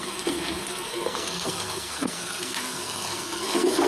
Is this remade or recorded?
remade